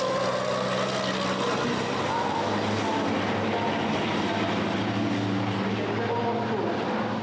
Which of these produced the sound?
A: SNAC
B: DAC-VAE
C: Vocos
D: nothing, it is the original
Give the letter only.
D